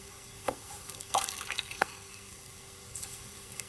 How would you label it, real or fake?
fake